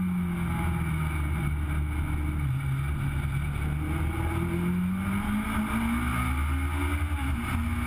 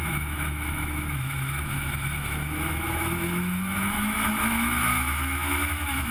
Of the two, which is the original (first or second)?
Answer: first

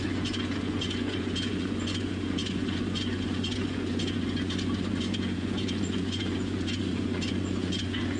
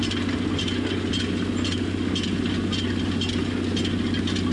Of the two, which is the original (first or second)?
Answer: second